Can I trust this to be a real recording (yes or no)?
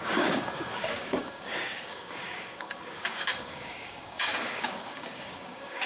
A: no